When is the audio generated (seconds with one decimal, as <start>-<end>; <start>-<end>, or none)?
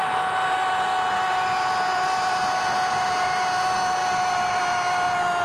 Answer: none